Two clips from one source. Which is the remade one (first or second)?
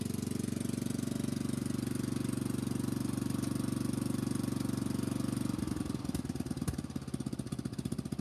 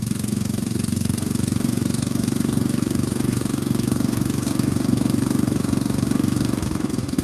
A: second